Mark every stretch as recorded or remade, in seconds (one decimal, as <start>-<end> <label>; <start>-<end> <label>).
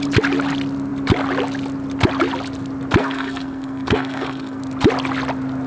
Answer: 0.0-3.0 recorded; 3.0-4.6 remade; 4.6-5.7 recorded